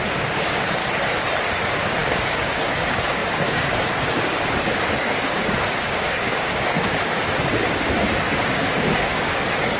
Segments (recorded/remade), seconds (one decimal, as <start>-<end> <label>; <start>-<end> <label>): 0.0-0.8 remade; 0.8-1.6 recorded; 1.6-9.8 remade